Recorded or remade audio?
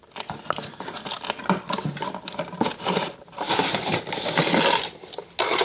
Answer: recorded